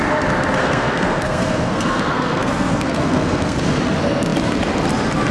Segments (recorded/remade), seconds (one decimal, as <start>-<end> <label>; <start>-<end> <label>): 0.0-0.6 recorded; 0.6-3.8 remade; 3.8-5.3 recorded